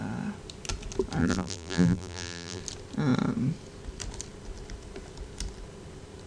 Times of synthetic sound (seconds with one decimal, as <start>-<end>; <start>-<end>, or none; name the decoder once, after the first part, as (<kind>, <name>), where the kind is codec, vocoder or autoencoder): 1.2-2.6 (vocoder, BigVGAN v2)